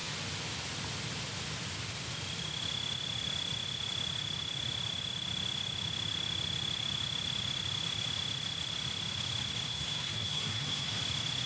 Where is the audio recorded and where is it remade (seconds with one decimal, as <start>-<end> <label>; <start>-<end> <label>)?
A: 0.0-9.7 recorded; 9.7-11.0 remade; 11.0-11.5 recorded